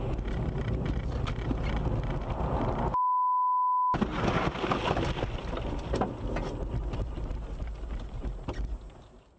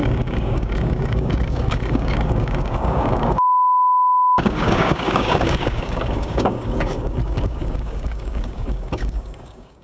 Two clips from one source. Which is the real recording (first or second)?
first